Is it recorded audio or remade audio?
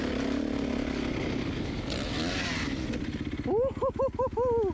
recorded